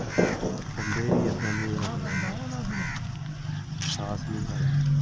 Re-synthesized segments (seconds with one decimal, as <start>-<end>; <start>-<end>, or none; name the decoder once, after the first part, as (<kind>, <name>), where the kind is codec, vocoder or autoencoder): none